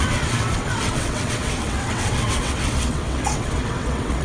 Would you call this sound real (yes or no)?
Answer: no